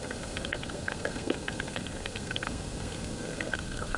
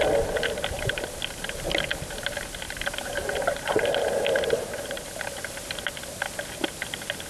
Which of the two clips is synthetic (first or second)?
first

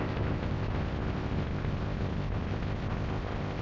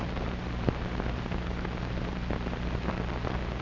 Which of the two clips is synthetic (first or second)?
first